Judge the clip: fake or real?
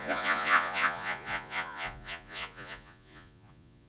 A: fake